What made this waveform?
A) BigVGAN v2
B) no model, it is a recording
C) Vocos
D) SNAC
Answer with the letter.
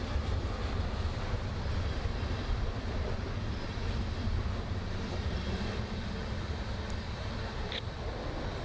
A